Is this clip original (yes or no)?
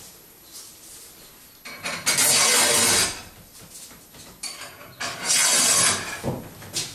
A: yes